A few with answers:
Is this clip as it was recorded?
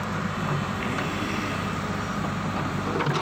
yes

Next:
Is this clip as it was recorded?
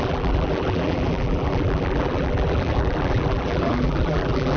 no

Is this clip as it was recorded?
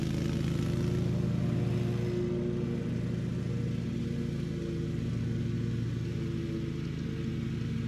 yes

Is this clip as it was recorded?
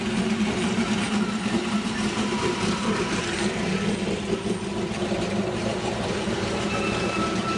no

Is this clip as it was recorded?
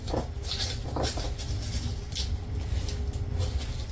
yes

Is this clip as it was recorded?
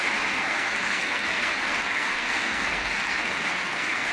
no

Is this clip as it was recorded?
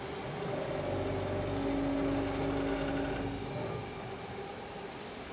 yes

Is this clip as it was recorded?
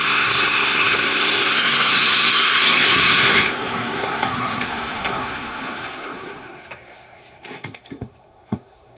no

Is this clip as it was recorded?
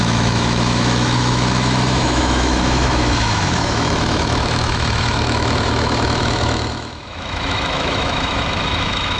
no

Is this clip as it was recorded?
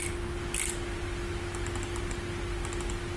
yes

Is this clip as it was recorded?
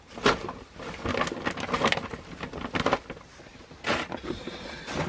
yes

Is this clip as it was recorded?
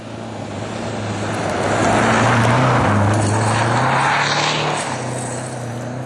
yes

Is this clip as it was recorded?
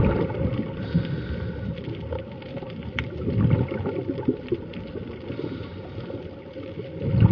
yes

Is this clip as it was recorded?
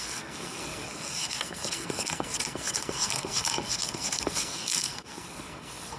no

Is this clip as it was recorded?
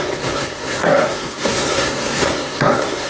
no